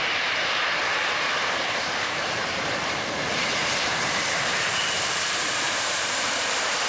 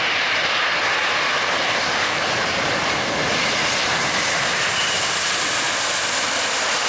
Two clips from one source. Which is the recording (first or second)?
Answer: second